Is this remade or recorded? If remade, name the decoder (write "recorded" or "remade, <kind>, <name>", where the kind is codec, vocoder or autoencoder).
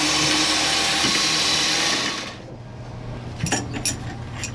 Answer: recorded